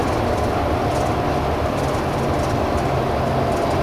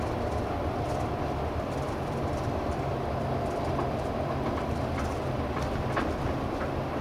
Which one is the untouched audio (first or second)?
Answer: first